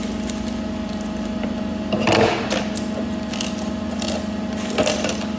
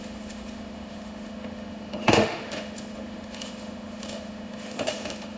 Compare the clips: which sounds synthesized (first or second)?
second